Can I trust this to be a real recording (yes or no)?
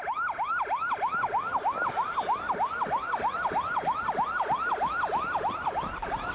yes